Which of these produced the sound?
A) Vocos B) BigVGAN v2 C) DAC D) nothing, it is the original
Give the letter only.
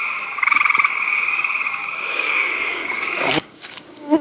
C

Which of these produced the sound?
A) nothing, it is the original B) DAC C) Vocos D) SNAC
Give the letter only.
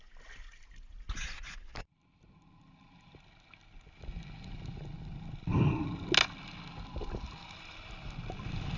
A